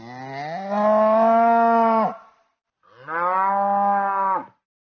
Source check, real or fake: real